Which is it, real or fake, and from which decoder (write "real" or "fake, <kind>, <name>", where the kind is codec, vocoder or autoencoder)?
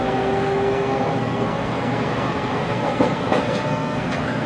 fake, codec, SNAC